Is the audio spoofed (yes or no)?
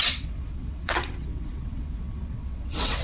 yes